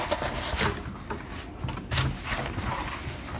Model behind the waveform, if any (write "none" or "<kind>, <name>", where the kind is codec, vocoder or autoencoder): none